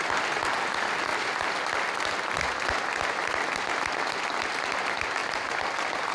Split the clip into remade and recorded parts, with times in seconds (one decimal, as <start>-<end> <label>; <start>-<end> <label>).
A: 0.0-6.1 recorded